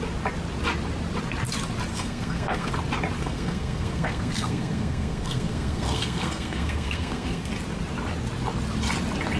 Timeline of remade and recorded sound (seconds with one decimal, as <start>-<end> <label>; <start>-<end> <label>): 0.0-1.9 recorded; 1.9-2.7 remade; 2.7-3.2 recorded; 3.2-7.5 remade; 7.5-9.4 recorded